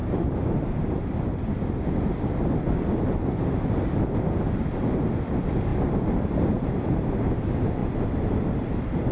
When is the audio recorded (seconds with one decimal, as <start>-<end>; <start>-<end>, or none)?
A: 0.0-5.7; 6.3-7.8